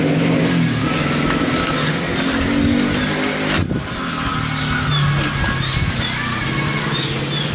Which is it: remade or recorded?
recorded